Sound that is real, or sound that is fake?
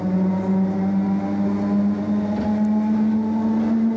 real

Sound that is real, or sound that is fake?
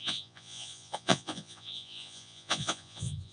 fake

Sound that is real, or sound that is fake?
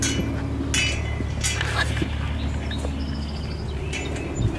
real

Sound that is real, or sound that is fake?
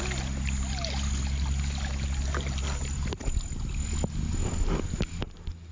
real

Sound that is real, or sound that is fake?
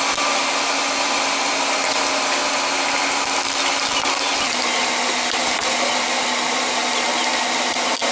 real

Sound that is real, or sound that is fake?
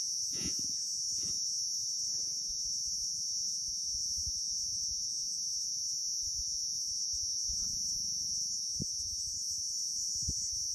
fake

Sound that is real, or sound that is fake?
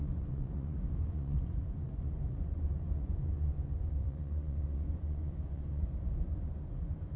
fake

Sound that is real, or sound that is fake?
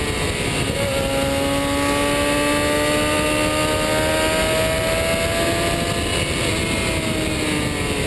real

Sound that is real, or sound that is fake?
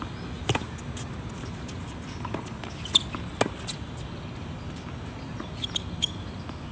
real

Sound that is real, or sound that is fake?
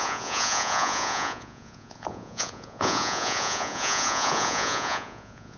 fake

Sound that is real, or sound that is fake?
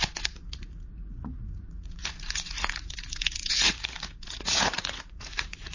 fake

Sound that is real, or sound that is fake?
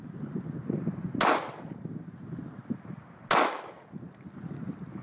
real